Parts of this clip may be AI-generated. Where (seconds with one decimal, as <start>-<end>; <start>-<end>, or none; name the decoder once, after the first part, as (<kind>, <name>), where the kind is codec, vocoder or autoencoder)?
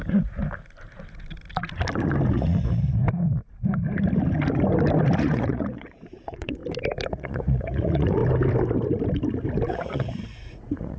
0.0-0.4 (vocoder, Vocos); 2.3-3.0; 5.2-6.6; 7.1-8.2; 9.7-11.0